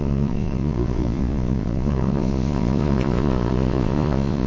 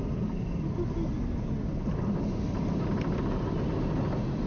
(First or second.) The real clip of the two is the second